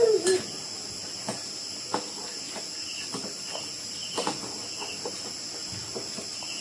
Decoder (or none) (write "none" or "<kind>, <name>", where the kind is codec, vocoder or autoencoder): none